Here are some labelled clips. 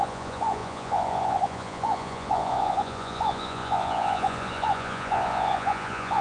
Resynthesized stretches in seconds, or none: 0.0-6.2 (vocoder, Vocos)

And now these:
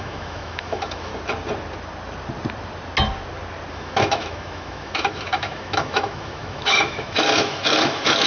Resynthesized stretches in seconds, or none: 0.0-1.1 (autoencoder, DAC-VAE); 3.7-8.3

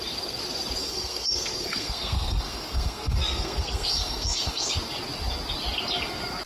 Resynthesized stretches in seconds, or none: 0.8-4.7 (codec, SNAC)

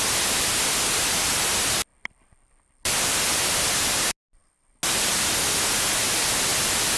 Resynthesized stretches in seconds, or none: 1.9-3.6 (vocoder, BigVGAN v2)

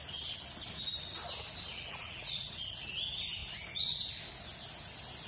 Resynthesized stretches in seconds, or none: 1.7-2.6 (vocoder, Vocos)

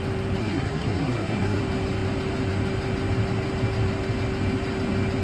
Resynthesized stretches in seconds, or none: 0.4-1.6 (codec, SNAC)

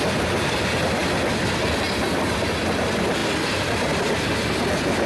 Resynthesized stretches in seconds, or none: none

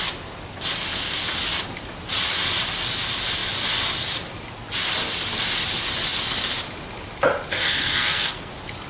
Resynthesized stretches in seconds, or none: 7.5-8.5 (codec, SNAC)